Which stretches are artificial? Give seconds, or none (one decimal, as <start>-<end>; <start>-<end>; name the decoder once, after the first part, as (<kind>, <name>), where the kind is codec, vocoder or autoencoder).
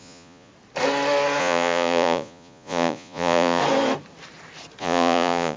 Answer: 0.0-0.5 (vocoder, Vocos); 1.4-3.6; 4.8-5.6